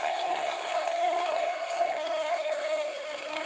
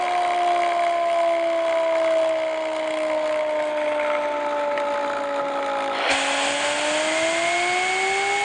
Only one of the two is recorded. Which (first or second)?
second